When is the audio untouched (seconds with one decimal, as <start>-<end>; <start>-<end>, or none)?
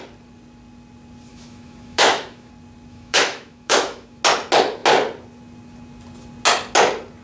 0.0-1.3; 2.5-2.9; 4.2-7.2